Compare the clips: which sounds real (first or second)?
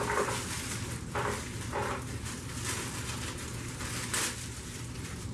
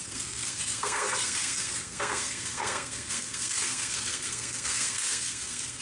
first